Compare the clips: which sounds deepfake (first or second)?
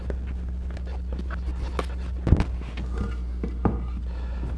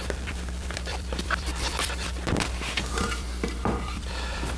second